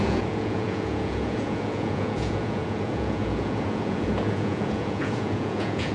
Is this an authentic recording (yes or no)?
no